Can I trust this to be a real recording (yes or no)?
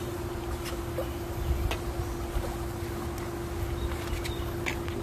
yes